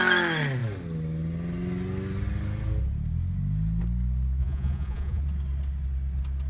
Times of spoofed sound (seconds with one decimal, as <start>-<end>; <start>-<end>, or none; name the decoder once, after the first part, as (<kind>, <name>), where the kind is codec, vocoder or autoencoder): 4.4-5.2 (vocoder, Vocos)